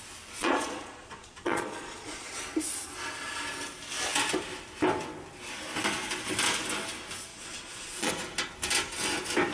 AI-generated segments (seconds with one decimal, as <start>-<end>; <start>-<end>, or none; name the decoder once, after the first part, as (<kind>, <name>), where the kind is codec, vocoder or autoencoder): 0.4-2.4 (vocoder, Vocos); 7.3-8.1